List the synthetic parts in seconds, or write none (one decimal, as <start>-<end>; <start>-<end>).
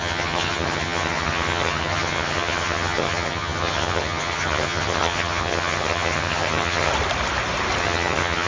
0.0-6.9; 7.8-8.5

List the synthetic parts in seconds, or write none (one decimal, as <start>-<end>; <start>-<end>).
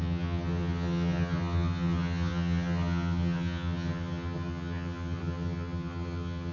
0.0-6.5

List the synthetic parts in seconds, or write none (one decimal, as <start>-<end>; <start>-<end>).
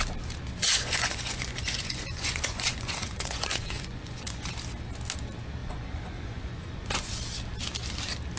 0.6-4.5; 5.6-7.2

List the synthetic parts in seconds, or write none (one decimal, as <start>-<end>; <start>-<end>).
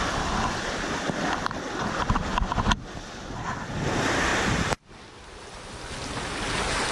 4.3-5.9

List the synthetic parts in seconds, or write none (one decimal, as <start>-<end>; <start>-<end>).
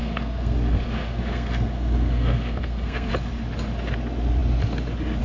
0.0-3.1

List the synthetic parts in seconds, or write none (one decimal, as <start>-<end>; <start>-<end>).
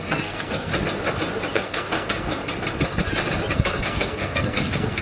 0.0-0.7; 1.5-2.4; 3.5-5.0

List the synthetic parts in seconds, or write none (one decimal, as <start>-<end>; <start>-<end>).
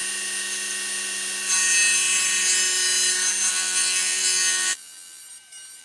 3.5-5.2